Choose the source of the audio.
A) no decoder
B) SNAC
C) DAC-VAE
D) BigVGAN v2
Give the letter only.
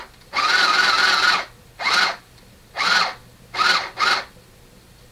A